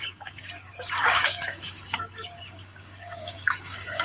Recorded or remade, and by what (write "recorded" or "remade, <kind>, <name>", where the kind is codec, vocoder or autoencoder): remade, codec, DAC